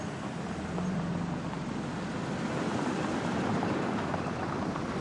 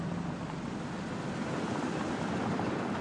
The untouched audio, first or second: first